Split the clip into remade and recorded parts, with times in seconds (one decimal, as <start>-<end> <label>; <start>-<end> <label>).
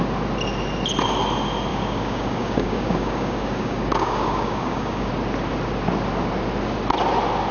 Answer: 0.0-1.7 recorded; 1.7-5.1 remade; 5.1-7.5 recorded